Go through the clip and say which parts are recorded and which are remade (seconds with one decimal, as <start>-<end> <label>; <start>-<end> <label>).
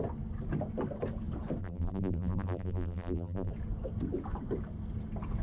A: 0.0-1.6 recorded; 1.6-3.5 remade; 3.5-5.4 recorded